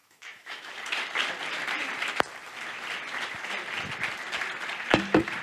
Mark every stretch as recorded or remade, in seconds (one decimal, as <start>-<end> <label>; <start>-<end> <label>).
0.0-0.7 remade; 0.7-5.4 recorded